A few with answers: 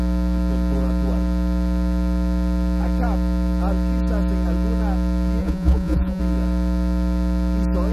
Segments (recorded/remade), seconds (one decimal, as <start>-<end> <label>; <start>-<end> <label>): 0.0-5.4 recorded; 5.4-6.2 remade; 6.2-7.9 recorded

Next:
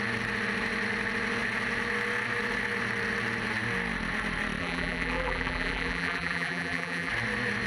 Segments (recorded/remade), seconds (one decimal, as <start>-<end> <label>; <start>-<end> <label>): 0.0-4.6 recorded; 4.6-7.1 remade; 7.1-7.7 recorded

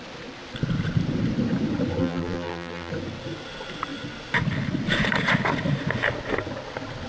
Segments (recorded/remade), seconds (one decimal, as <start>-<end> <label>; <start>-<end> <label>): 0.0-2.0 recorded; 2.0-2.9 remade; 2.9-7.1 recorded